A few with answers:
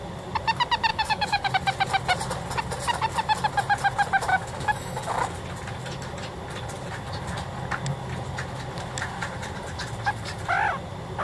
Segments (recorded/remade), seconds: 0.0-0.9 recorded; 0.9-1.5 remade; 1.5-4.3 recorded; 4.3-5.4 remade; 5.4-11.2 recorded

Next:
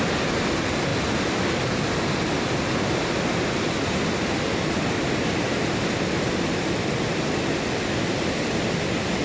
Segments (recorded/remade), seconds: 0.0-9.2 recorded

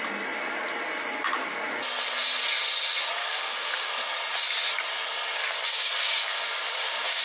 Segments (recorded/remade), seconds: 0.0-3.2 recorded; 3.2-3.9 remade; 3.9-5.4 recorded; 5.4-7.2 remade

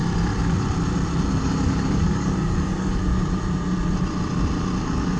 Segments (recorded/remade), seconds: 0.0-1.4 recorded; 1.4-3.1 remade; 3.1-4.8 recorded; 4.8-5.2 remade

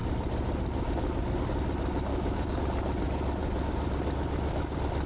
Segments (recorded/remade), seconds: 0.0-2.1 recorded; 2.1-2.6 remade; 2.6-5.1 recorded

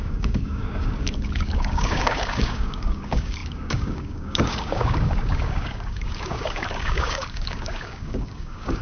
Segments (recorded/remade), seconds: 0.0-8.8 remade

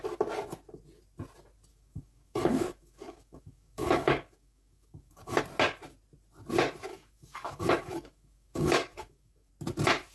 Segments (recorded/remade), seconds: 0.0-1.7 recorded; 1.7-5.4 remade; 5.4-6.9 recorded; 6.9-9.5 remade; 9.5-10.1 recorded